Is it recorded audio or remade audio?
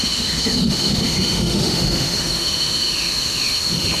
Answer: remade